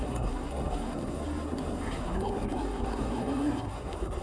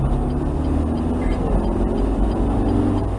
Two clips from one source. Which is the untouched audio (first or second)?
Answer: second